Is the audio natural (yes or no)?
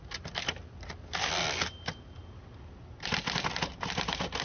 yes